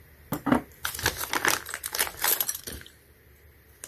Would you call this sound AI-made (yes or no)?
yes